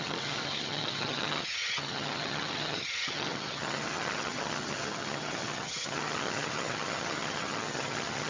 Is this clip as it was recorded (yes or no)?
no